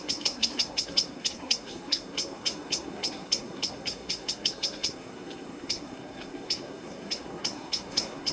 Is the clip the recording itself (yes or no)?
no